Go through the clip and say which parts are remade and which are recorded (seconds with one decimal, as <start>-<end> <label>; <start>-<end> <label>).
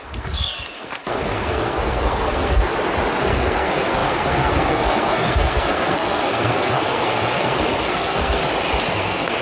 0.0-2.7 remade; 2.7-3.2 recorded; 3.2-8.4 remade; 8.4-8.9 recorded; 8.9-9.4 remade